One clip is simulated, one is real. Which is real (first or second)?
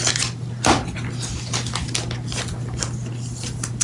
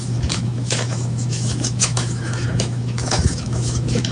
first